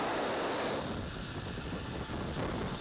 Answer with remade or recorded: recorded